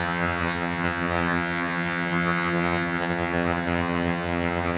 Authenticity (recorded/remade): remade